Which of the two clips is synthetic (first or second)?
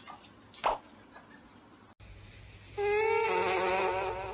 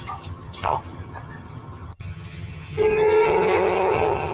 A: second